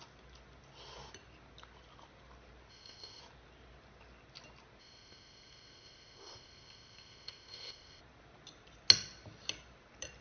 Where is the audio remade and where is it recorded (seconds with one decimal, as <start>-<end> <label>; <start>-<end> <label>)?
0.0-2.7 recorded; 2.7-3.2 remade; 3.2-4.8 recorded; 4.8-8.0 remade; 8.0-10.2 recorded